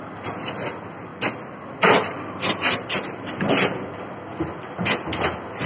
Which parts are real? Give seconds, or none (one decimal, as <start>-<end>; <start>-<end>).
0.0-1.1; 3.3-5.7